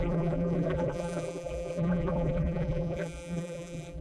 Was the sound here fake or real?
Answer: fake